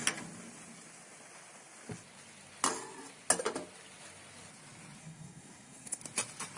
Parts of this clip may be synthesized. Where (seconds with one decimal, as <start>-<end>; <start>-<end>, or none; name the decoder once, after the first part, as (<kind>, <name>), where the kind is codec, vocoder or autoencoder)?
5.0-6.0 (codec, SNAC)

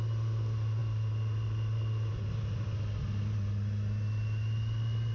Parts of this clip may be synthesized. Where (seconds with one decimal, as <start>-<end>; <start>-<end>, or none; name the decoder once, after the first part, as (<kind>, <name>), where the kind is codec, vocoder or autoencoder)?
none

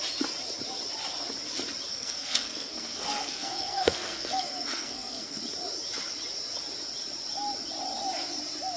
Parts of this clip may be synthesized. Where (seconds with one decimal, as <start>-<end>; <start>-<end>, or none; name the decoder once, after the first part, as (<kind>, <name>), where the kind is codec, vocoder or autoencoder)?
1.9-5.4 (codec, SNAC)

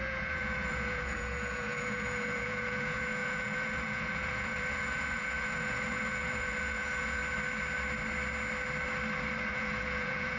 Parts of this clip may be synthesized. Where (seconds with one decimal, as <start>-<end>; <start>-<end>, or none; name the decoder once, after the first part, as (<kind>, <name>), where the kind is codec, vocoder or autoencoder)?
0.0-7.2 (vocoder, Vocos); 9.5-10.4

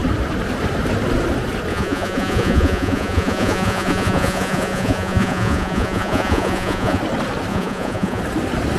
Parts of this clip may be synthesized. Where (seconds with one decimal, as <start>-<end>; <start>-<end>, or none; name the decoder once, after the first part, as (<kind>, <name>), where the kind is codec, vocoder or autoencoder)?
1.7-7.0 (vocoder, Vocos); 7.5-8.2

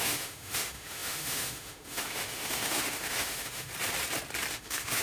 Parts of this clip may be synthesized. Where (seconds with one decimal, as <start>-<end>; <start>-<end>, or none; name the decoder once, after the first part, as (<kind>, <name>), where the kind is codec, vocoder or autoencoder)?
0.0-3.7 (autoencoder, DAC-VAE); 4.5-5.0